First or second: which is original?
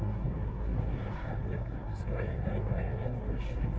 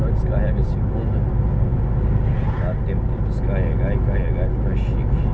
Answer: second